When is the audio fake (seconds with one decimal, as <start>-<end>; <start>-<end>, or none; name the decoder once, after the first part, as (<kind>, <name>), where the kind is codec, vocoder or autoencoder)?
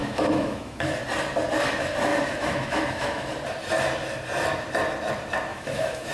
0.0-0.9 (autoencoder, DAC-VAE); 2.1-3.3; 5.5-6.1